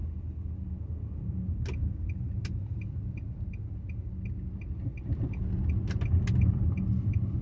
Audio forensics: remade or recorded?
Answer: recorded